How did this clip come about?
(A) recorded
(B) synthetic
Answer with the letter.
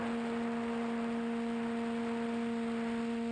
A